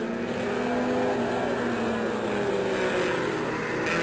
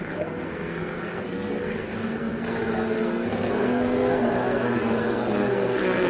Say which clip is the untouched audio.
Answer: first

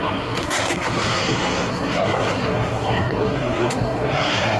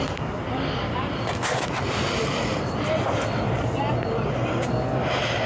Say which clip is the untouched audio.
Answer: second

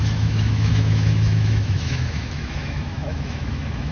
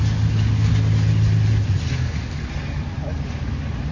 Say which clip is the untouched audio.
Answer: second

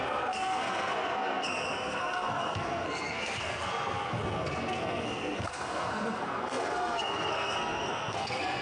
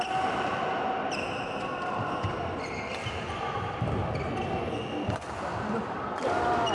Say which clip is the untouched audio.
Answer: second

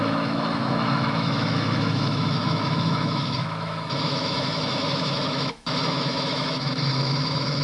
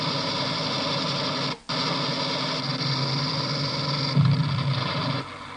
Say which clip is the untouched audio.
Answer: second